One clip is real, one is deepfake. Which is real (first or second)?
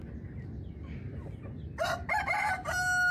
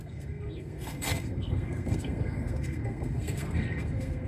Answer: first